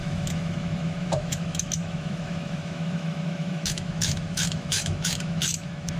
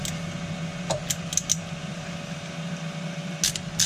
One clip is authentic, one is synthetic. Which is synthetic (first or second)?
first